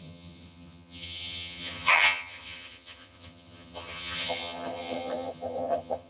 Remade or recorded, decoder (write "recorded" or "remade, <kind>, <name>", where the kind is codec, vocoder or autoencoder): remade, vocoder, HiFi-GAN